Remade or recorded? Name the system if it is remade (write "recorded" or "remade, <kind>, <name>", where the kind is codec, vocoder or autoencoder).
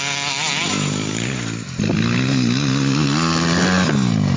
recorded